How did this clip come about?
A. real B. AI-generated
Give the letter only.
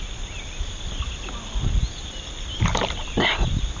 A